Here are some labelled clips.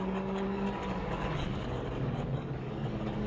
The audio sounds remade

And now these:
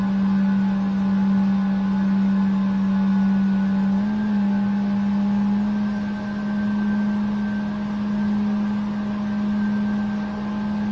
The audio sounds recorded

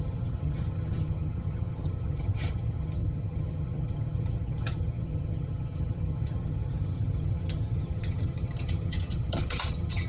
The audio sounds remade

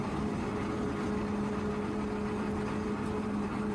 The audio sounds recorded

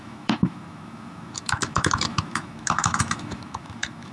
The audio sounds remade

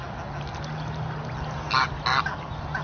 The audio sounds recorded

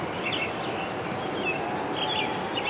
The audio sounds recorded